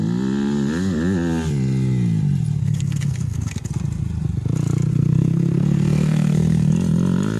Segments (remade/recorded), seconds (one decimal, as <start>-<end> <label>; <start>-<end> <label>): 0.0-2.6 recorded; 2.6-3.5 remade; 3.5-4.9 recorded; 4.9-6.7 remade; 6.7-7.4 recorded